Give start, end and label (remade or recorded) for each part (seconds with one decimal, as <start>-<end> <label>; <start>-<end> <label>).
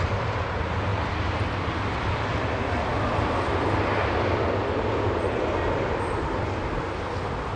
0.0-7.6 recorded